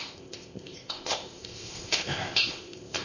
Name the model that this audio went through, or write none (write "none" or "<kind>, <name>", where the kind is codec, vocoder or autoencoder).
codec, ZipCodec